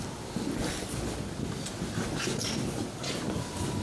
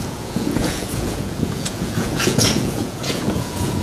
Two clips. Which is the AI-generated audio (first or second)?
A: second